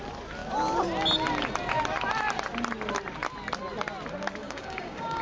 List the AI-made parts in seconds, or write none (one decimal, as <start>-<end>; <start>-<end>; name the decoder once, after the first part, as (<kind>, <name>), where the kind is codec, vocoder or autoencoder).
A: 4.4-5.2 (codec, DAC)